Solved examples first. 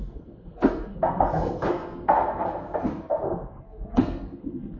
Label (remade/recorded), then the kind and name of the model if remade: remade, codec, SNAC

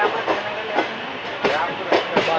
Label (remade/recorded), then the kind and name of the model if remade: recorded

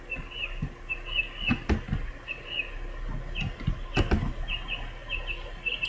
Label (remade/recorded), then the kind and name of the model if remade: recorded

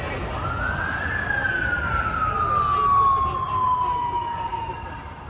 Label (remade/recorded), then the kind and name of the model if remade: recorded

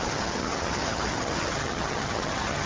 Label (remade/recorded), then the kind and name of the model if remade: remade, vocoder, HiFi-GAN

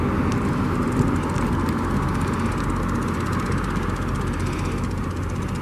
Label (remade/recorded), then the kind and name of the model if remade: recorded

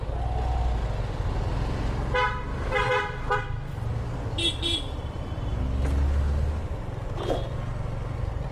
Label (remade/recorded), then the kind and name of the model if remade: recorded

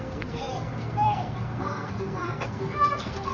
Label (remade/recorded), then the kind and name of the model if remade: remade, codec, SNAC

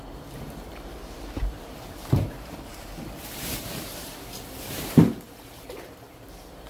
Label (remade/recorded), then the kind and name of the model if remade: remade, vocoder, BigVGAN v2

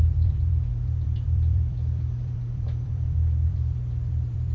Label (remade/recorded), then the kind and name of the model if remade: remade, vocoder, BigVGAN v2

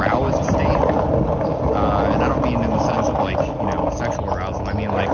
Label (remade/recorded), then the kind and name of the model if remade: recorded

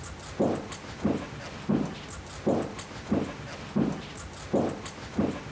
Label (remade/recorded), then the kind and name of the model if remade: recorded